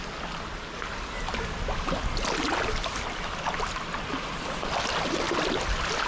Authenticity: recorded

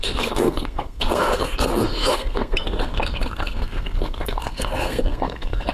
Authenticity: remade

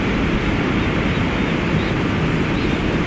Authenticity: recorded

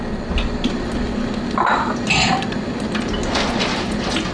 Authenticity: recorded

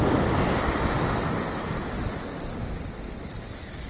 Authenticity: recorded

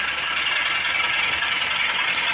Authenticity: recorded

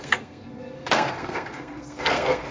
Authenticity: remade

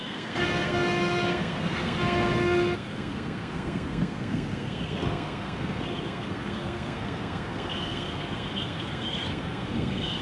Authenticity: remade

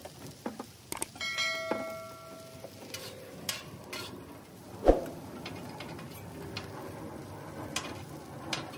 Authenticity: recorded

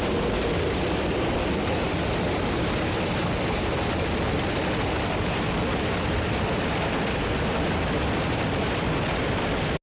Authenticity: recorded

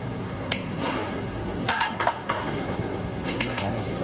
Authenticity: remade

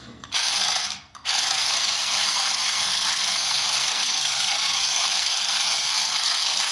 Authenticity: remade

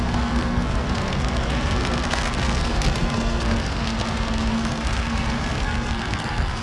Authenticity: remade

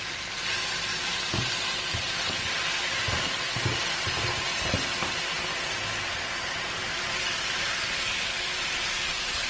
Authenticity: recorded